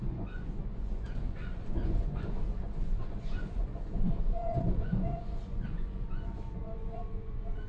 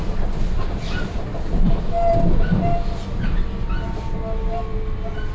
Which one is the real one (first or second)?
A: second